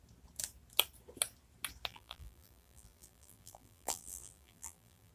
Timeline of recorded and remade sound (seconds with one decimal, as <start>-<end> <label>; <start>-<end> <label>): 0.0-1.9 recorded; 1.9-5.1 remade